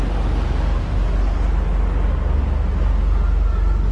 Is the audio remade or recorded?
recorded